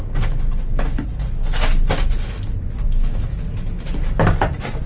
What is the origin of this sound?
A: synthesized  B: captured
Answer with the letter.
B